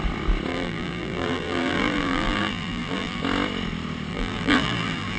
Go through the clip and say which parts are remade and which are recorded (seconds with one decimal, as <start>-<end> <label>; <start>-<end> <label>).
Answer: 0.0-0.5 recorded; 0.5-3.2 remade; 3.2-4.1 recorded; 4.1-5.2 remade